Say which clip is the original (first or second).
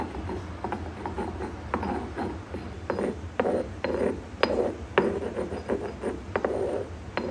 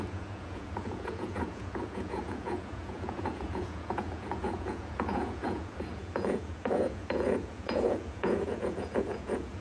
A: first